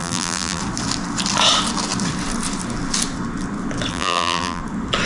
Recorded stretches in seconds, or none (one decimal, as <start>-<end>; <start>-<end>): 0.6-3.9; 4.6-5.1

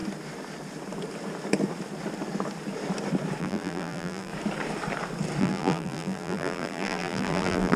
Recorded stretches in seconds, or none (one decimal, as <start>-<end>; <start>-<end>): 0.0-3.4; 4.3-5.4

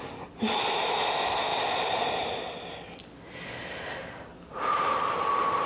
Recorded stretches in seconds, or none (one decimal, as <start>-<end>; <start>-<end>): 0.0-1.5; 3.0-4.3; 5.1-5.7

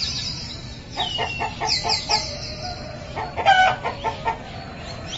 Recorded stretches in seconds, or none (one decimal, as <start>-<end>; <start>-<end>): 0.0-0.4; 1.3-5.2